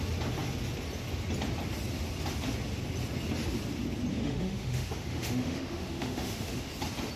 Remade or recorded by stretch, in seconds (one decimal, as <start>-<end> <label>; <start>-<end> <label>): 0.0-4.1 recorded; 4.1-6.7 remade; 6.7-7.2 recorded